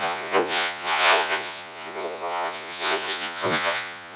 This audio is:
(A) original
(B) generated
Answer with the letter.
B